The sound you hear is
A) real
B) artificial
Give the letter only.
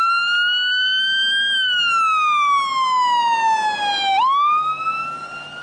A